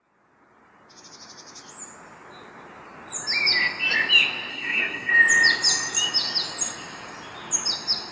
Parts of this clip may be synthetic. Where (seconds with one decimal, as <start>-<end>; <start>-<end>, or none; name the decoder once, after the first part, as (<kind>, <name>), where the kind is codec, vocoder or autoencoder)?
4.5-5.1 (codec, SNAC)